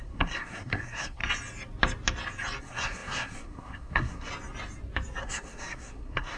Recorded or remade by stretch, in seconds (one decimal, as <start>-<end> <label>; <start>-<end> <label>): 0.0-1.2 remade; 1.2-2.6 recorded; 2.6-4.3 remade; 4.3-5.2 recorded; 5.2-6.4 remade